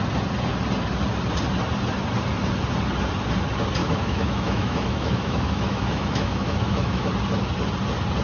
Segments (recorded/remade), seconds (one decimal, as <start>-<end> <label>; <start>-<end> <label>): 0.0-3.8 recorded; 3.8-7.1 remade; 7.1-8.2 recorded